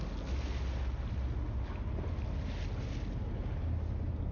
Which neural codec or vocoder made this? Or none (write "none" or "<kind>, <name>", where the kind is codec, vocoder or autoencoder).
none